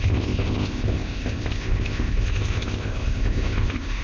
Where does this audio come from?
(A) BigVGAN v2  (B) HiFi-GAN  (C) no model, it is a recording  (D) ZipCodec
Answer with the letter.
D